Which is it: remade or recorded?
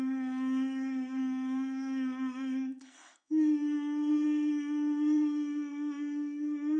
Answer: remade